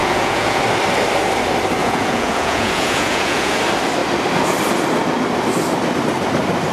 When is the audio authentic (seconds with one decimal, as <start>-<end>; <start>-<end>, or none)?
0.6-1.8; 3.6-6.7